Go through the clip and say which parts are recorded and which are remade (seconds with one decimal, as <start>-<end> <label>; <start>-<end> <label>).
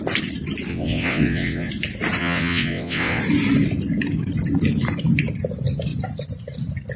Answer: 0.0-0.7 recorded; 0.7-1.7 remade; 1.7-2.2 recorded; 2.2-3.2 remade; 3.2-7.0 recorded